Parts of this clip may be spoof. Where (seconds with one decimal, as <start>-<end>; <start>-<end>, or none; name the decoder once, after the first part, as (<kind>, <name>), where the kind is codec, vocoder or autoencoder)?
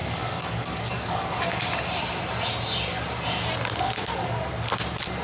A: 0.0-1.6 (codec, DAC)